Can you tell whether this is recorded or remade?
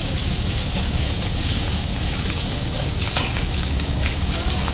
remade